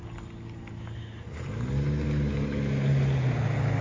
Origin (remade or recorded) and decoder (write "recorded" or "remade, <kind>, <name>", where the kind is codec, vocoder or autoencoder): recorded